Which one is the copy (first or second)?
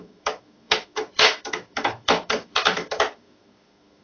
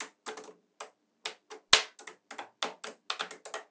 first